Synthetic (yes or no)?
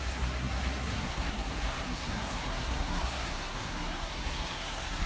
yes